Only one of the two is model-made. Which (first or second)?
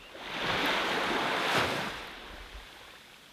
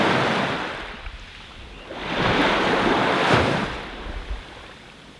second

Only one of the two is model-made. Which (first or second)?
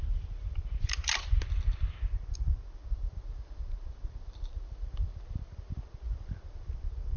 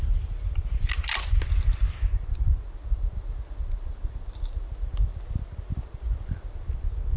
first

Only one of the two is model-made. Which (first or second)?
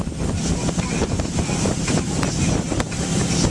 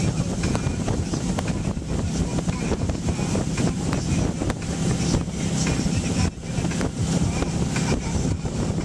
first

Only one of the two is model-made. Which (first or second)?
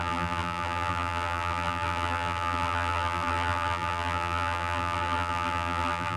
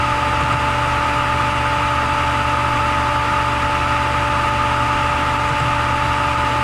first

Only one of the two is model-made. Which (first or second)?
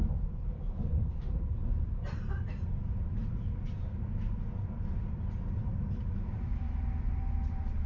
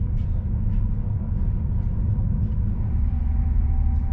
first